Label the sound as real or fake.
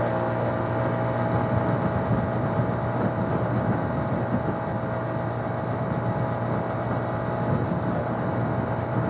real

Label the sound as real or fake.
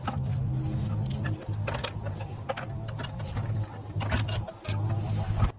real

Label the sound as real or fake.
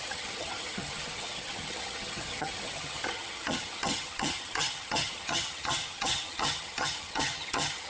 fake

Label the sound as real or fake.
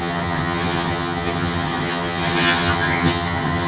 fake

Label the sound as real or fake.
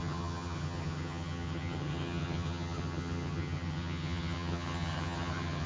fake